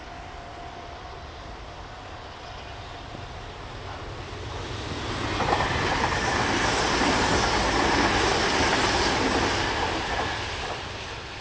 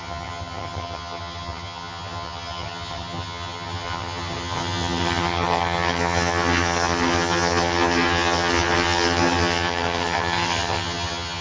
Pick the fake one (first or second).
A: second